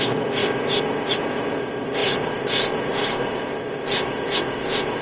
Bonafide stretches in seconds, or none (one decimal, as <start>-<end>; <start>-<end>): none